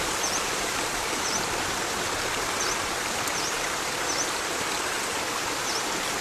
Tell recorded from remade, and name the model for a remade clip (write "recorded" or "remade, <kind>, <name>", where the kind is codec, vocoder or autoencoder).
recorded